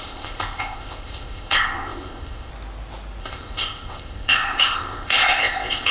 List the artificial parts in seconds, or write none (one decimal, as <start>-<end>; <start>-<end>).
0.0-2.5; 3.2-5.9